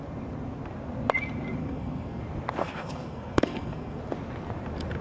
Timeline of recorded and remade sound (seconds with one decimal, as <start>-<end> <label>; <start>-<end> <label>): 0.0-1.6 recorded; 1.6-2.2 remade; 2.2-2.6 recorded; 2.6-4.0 remade; 4.0-5.0 recorded